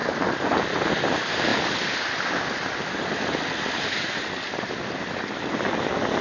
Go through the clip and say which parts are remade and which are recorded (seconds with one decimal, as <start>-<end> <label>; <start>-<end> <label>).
0.0-6.2 recorded